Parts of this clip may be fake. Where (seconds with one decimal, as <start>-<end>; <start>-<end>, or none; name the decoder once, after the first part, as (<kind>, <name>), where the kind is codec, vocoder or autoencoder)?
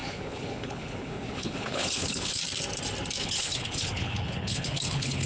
0.0-2.4 (codec, HILCodec); 3.2-5.3